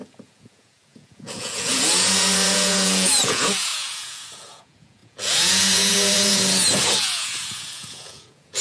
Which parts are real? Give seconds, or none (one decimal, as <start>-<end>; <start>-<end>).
none